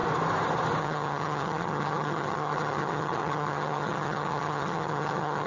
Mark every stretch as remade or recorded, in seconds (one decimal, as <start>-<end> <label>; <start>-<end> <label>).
0.0-0.8 recorded; 0.8-5.5 remade

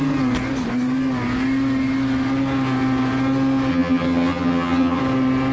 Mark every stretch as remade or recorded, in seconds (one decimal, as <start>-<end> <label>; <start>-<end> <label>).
0.0-3.7 recorded; 3.7-5.0 remade; 5.0-5.5 recorded

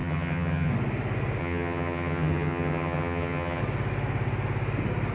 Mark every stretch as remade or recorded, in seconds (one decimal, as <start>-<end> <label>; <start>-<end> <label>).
0.0-0.7 remade; 0.7-1.4 recorded; 1.4-3.6 remade; 3.6-5.1 recorded

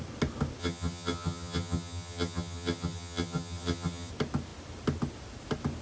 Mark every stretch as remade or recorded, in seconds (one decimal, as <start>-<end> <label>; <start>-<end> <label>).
0.0-0.6 recorded; 0.6-4.1 remade; 4.1-5.8 recorded

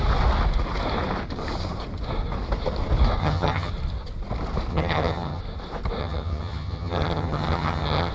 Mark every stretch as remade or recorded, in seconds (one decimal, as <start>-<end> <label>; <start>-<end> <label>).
0.0-3.2 recorded; 3.2-3.7 remade; 3.7-4.7 recorded; 4.7-5.4 remade; 5.4-6.0 recorded; 6.0-8.1 remade

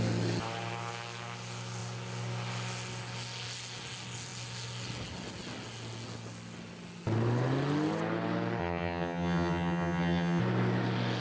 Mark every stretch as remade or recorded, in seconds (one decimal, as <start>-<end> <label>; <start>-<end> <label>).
0.0-8.6 recorded; 8.6-10.4 remade; 10.4-11.2 recorded

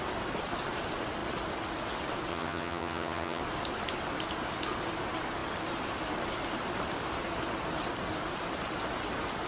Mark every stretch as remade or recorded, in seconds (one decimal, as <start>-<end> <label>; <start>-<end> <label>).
0.0-2.3 recorded; 2.3-3.4 remade; 3.4-9.5 recorded

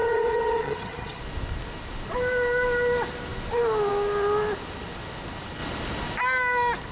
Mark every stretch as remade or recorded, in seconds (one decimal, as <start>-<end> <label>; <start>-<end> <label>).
0.0-1.2 remade; 1.2-6.9 recorded